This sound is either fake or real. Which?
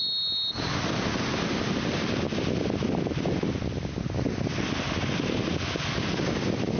real